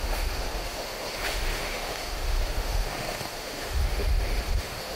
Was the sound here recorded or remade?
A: remade